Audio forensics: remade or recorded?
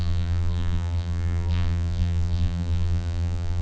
remade